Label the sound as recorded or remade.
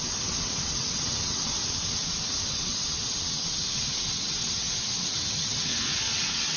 remade